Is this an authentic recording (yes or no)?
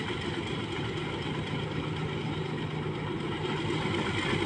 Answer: yes